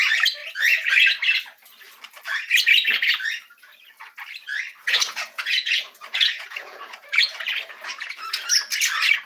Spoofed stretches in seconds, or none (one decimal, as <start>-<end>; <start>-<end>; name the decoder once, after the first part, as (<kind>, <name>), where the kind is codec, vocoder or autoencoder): 0.4-0.9 (vocoder, Vocos); 4.8-7.5

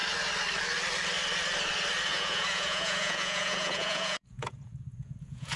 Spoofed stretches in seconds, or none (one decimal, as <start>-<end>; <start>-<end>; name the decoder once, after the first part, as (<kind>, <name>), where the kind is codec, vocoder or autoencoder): 2.1-5.6 (vocoder, Vocos)

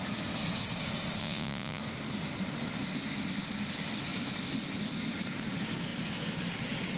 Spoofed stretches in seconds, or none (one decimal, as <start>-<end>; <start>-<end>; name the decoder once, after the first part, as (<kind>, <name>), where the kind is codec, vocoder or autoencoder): 1.2-1.8 (vocoder, Vocos)

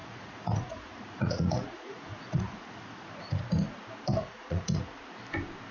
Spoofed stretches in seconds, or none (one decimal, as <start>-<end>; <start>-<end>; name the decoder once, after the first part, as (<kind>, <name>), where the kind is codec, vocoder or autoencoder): 0.0-3.4 (vocoder, Vocos); 4.2-5.0

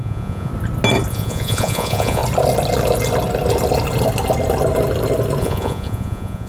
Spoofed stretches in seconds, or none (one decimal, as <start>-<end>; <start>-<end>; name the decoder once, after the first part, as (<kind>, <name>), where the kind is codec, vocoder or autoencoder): 0.0-0.5 (vocoder, Vocos); 1.1-2.2; 5.4-6.5

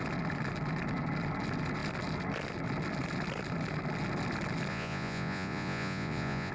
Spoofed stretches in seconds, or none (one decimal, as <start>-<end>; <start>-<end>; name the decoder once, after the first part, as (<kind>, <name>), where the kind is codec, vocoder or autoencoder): 4.7-6.5 (vocoder, Vocos)

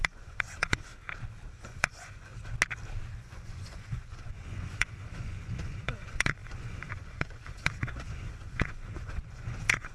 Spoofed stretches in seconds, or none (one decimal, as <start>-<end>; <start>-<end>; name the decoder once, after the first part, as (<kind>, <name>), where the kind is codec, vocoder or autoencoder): 0.0-0.9 (vocoder, Vocos); 1.6-2.3; 3.2-9.9

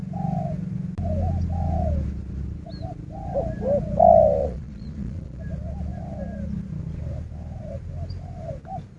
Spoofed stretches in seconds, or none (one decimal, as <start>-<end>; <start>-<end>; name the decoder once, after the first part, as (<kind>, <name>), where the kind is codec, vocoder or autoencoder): 4.4-5.4 (vocoder, Vocos)